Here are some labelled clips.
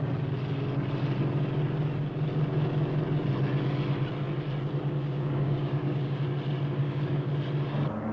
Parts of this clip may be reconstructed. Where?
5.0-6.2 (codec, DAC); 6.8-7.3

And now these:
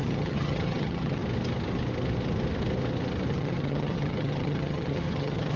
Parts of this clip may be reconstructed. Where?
0.0-1.2 (vocoder, HiFi-GAN); 3.3-5.6

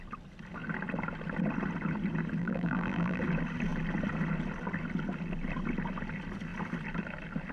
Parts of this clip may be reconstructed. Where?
2.4-3.2 (vocoder, BigVGAN v2)